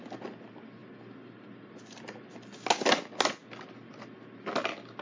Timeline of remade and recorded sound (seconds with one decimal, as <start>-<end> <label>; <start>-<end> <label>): 0.0-5.0 recorded